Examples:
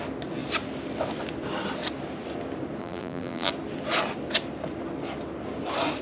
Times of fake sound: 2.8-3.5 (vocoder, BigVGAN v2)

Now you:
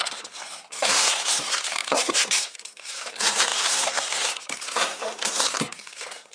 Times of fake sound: 0.0-6.3 (codec, SNAC)

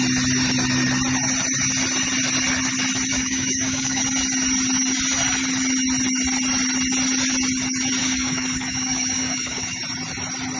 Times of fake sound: 3.1-4.0 (codec, DAC); 8.0-9.8

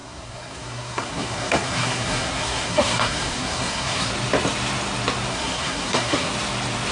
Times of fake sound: 0.0-4.1 (codec, SNAC); 5.3-6.3

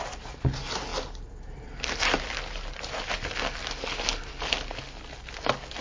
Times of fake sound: none

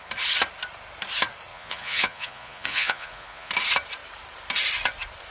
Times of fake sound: 1.5-3.5 (vocoder, Vocos)